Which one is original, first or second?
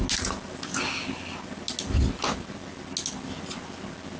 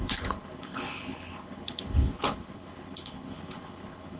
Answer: first